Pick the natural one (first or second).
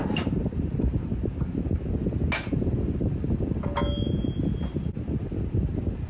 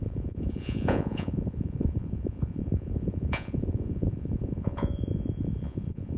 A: first